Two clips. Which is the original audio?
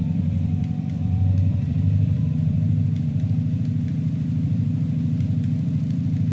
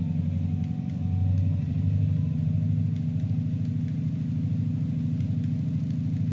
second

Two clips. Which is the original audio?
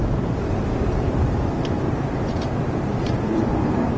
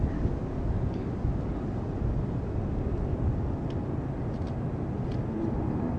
second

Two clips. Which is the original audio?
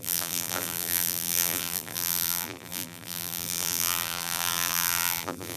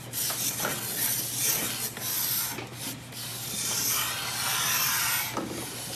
second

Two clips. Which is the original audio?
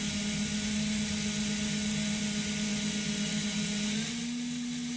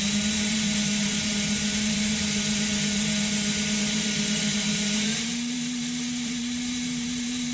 first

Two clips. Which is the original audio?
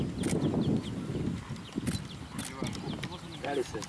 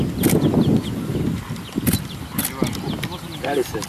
first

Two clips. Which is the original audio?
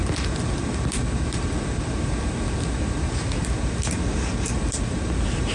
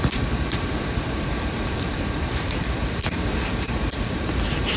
first